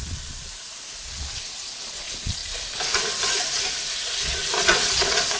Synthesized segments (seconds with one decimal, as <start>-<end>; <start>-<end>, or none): 0.0-2.4; 3.9-5.4